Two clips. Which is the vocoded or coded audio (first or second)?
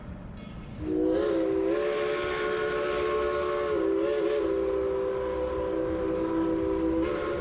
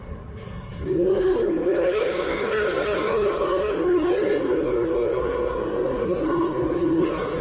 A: second